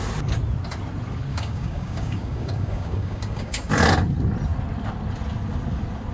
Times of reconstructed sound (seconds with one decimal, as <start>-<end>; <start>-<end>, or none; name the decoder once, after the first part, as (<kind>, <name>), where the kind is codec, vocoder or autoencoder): 1.3-3.7 (codec, DAC)